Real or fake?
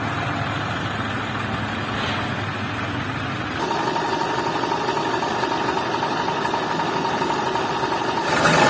real